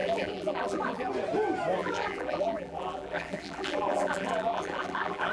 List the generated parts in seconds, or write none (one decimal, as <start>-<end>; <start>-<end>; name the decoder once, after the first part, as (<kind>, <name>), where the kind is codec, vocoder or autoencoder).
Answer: 0.0-1.1 (vocoder, BigVGAN v2); 1.8-5.3